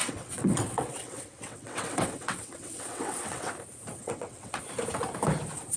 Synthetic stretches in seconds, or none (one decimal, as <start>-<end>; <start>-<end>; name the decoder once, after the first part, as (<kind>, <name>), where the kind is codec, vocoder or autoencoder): 0.0-3.5 (vocoder, WaveNeXt); 4.0-4.6